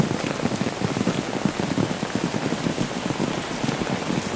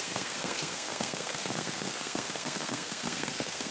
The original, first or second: first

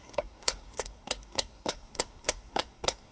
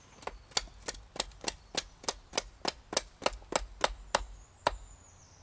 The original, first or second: second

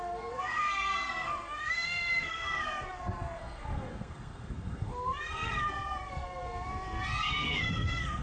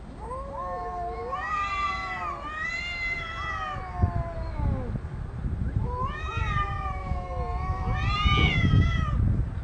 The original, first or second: second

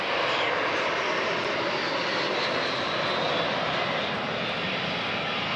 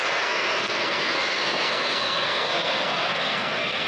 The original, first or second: first